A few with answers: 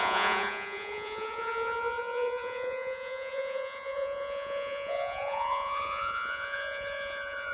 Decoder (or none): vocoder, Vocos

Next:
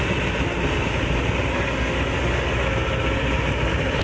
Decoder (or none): none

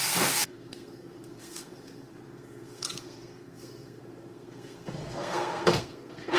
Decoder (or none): codec, SNAC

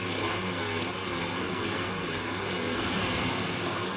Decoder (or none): codec, SNAC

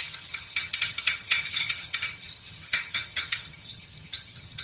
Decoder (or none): vocoder, HiFi-GAN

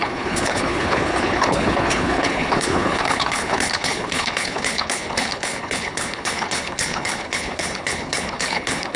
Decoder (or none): codec, HILCodec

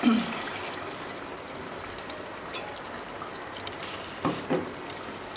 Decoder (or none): none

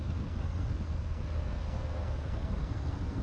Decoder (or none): codec, SNAC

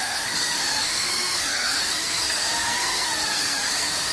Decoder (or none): codec, SNAC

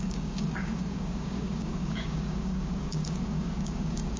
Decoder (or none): codec, DAC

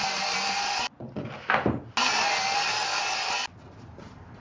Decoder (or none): none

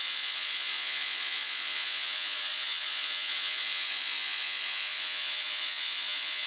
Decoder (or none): vocoder, Vocos